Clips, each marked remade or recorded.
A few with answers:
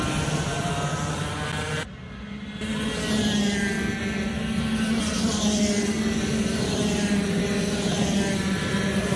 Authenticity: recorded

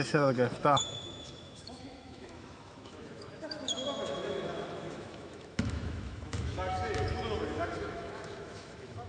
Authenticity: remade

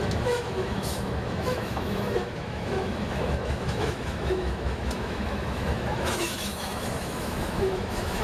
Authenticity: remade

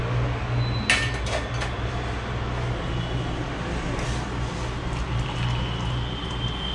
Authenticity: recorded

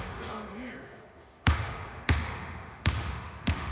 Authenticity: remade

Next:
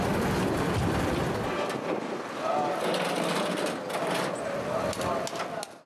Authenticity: recorded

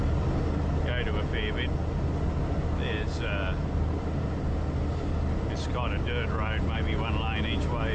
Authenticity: recorded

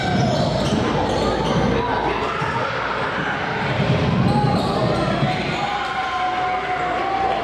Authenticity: recorded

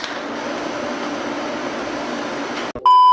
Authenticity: recorded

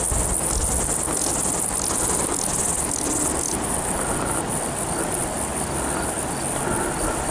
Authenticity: recorded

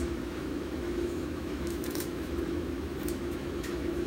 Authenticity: remade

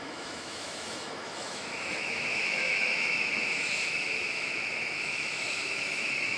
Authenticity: remade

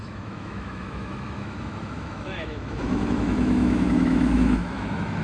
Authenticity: remade